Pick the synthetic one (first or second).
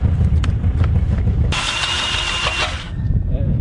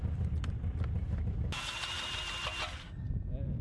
first